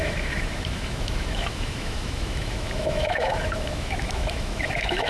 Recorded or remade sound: remade